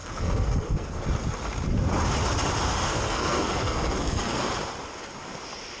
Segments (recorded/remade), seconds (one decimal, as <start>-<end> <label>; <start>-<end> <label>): 0.0-1.0 remade; 1.0-2.7 recorded; 2.7-4.4 remade; 4.4-5.8 recorded